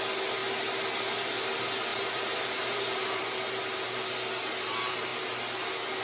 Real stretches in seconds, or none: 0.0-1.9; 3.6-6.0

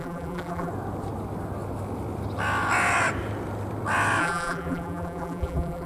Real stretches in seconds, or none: 0.7-4.2

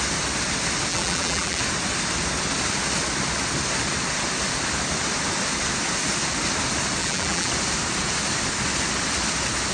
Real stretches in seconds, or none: 0.0-0.9; 1.6-7.0; 7.5-9.7

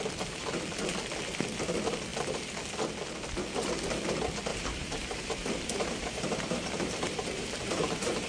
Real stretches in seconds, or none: 0.0-4.5

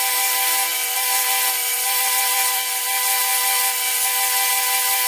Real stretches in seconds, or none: 0.0-0.7; 2.8-5.1

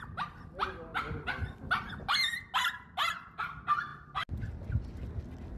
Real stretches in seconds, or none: 0.0-5.6